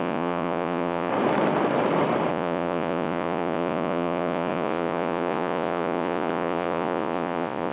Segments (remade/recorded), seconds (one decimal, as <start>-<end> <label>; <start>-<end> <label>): 0.0-1.1 remade; 1.1-2.3 recorded; 2.3-7.7 remade